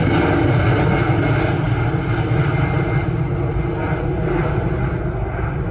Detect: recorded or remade recorded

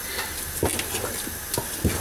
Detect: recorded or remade recorded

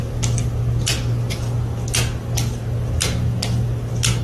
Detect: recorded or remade recorded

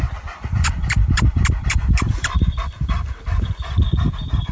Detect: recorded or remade remade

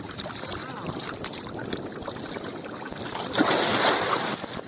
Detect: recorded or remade recorded